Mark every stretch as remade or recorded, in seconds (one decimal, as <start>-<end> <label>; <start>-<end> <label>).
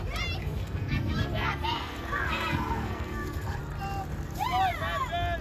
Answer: 0.0-0.4 recorded; 0.4-3.6 remade; 3.6-5.4 recorded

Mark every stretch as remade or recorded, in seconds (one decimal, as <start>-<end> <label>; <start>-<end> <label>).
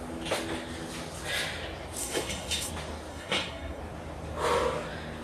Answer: 0.0-2.0 recorded; 2.0-2.7 remade; 2.7-3.1 recorded; 3.1-3.8 remade; 3.8-5.2 recorded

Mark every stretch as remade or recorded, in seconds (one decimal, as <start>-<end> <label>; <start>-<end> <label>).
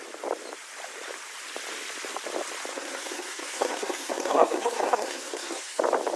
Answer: 0.0-2.7 recorded; 2.7-5.8 remade; 5.8-6.2 recorded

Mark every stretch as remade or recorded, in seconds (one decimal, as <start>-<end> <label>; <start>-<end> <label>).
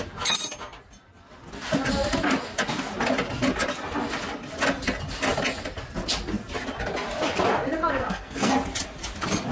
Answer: 0.0-7.8 recorded; 7.8-8.5 remade; 8.5-9.5 recorded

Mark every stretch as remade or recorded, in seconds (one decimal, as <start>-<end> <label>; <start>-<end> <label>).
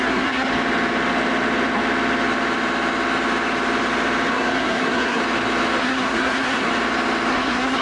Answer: 0.0-0.5 remade; 0.5-4.3 recorded; 4.3-5.2 remade; 5.2-5.8 recorded; 5.8-6.7 remade; 6.7-7.3 recorded; 7.3-7.8 remade